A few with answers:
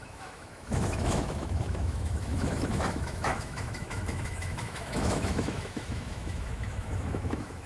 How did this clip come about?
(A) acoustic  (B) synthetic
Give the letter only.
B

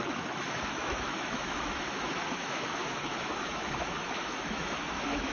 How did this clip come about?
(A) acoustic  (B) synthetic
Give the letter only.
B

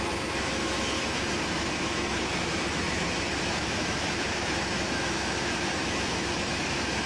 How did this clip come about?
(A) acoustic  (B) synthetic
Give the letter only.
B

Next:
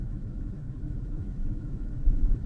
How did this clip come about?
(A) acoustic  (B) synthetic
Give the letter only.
B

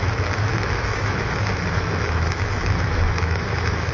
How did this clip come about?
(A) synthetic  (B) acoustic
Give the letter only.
A